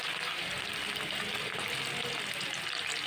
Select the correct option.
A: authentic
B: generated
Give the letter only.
A